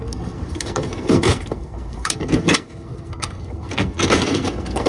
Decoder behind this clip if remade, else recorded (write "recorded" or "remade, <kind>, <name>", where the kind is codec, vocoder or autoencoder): remade, codec, SNAC